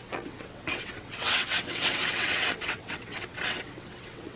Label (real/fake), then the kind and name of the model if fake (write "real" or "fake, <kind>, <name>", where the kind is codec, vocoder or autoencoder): fake, vocoder, WaveNeXt